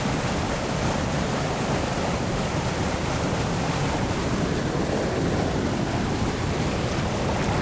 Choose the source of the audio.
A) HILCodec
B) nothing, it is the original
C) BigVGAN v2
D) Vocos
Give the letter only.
C